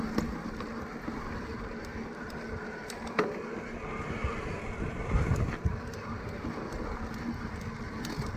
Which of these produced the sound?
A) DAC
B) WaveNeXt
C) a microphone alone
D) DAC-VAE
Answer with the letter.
C